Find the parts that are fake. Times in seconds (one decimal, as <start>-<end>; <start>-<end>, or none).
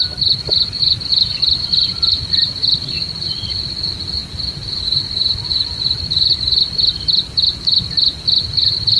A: none